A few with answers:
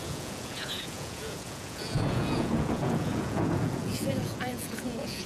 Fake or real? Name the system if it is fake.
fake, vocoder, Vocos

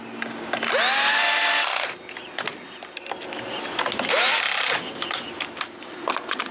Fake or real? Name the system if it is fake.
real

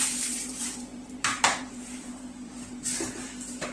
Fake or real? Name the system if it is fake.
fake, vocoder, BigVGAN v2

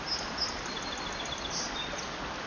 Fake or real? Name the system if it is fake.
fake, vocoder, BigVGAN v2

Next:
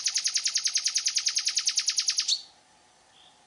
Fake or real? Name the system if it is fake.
real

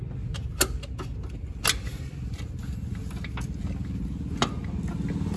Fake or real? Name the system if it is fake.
real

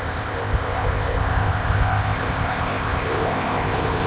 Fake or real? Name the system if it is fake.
fake, codec, ZipCodec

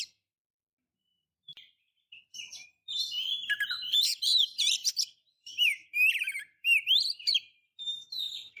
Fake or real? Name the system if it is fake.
fake, vocoder, BigVGAN v2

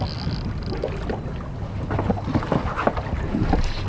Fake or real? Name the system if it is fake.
real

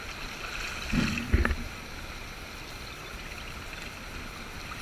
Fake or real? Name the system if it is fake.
real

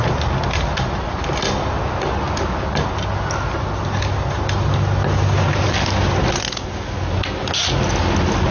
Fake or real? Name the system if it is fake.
real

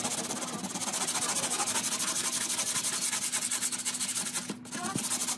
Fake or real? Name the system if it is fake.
real